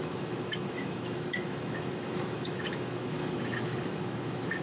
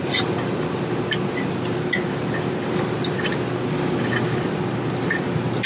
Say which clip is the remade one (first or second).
first